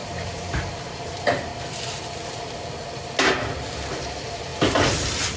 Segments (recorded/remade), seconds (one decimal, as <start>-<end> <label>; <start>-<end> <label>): 0.0-1.5 remade; 1.5-3.9 recorded; 3.9-5.4 remade